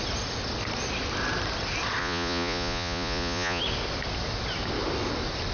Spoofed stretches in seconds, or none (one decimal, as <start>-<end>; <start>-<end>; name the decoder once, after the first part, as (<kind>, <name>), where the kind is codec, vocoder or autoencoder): 2.0-3.6 (vocoder, Vocos)